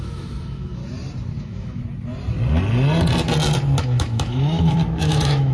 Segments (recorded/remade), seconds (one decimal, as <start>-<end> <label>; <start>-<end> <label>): 0.0-0.8 remade; 0.8-1.4 recorded; 1.4-1.8 remade; 1.8-3.8 recorded; 3.8-5.5 remade